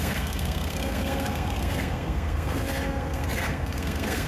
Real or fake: fake